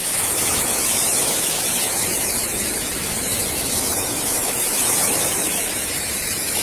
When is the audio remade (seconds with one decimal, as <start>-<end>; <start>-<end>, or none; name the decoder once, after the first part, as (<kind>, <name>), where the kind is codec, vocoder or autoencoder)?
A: 0.0-6.6 (autoencoder, DAC-VAE)